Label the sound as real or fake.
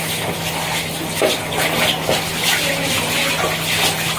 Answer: real